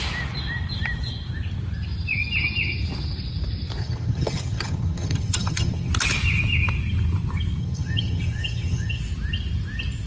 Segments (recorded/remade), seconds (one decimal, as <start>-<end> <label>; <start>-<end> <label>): 0.0-3.8 recorded; 3.8-5.9 remade; 5.9-7.6 recorded; 7.6-9.0 remade; 9.0-10.1 recorded